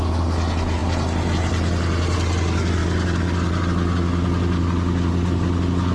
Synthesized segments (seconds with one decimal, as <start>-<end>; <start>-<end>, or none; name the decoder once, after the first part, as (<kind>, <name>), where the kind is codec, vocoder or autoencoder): none